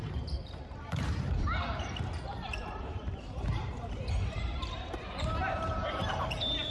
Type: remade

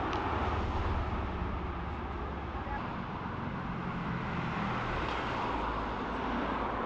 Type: recorded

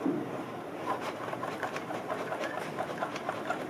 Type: remade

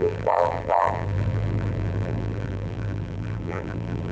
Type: remade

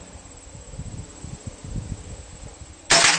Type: recorded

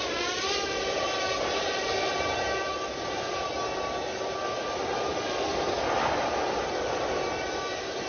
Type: recorded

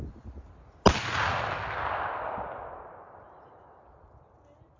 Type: recorded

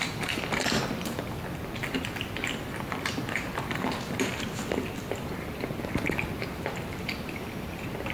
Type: remade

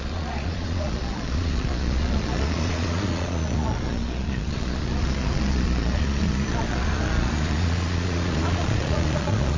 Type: remade